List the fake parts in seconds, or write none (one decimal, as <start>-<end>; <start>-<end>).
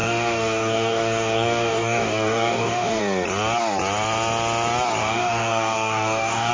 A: 0.0-3.0; 5.0-6.5